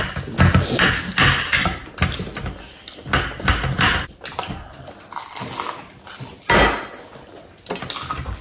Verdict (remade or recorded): recorded